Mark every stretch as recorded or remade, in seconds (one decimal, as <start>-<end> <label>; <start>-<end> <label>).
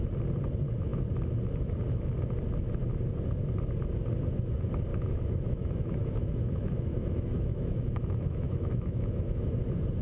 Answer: 0.0-4.9 recorded; 4.9-9.6 remade; 9.6-10.0 recorded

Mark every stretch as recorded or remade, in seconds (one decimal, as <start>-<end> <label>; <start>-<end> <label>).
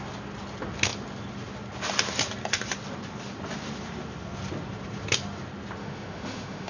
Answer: 0.0-5.8 recorded; 5.8-6.7 remade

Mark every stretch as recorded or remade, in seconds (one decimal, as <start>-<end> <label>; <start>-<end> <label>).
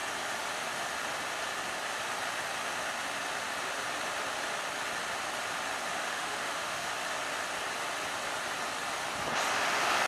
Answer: 0.0-6.0 recorded; 6.0-6.9 remade; 6.9-10.1 recorded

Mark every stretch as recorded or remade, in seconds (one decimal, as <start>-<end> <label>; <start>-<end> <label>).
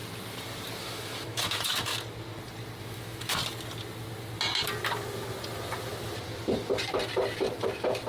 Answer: 0.0-0.8 recorded; 0.8-1.9 remade; 1.9-2.8 recorded; 2.8-3.4 remade; 3.4-8.1 recorded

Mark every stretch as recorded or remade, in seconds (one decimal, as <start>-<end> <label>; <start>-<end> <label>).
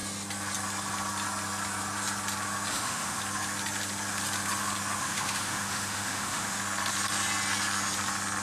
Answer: 0.0-2.7 recorded; 2.7-3.2 remade; 3.2-5.0 recorded; 5.0-6.6 remade; 6.6-8.4 recorded